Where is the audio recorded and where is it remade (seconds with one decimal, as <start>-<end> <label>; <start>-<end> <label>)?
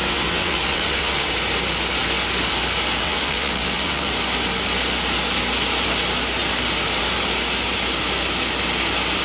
0.0-1.3 remade; 1.3-3.0 recorded; 3.0-4.1 remade; 4.1-9.2 recorded